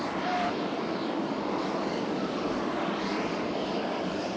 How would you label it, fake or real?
fake